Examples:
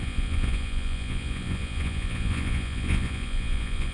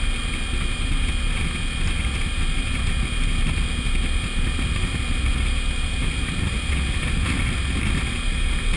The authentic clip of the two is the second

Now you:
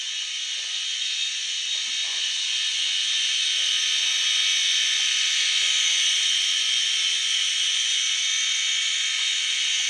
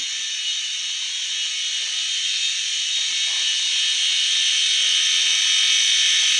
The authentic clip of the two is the second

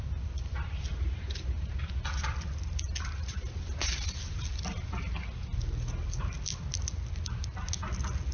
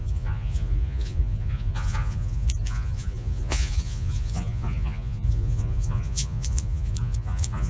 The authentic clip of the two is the first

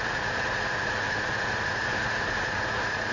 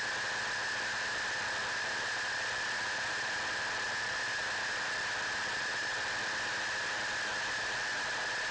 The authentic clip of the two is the second